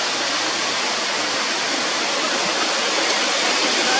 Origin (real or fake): real